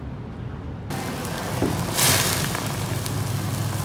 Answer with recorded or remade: recorded